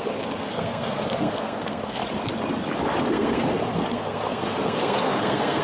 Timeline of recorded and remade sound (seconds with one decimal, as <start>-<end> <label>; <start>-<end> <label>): 0.0-2.0 remade; 2.0-3.1 recorded; 3.1-5.6 remade